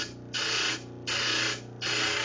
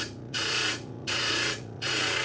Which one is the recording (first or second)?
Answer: first